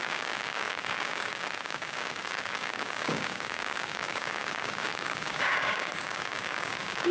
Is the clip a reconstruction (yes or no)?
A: yes